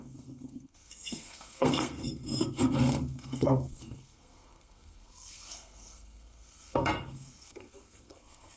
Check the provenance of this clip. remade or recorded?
remade